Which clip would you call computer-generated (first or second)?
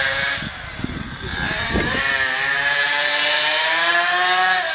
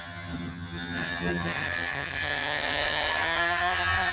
second